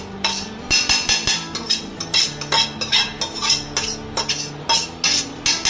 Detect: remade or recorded recorded